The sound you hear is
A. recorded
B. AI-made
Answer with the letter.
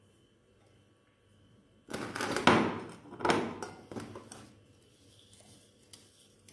A